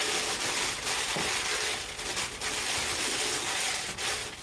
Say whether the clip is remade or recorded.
recorded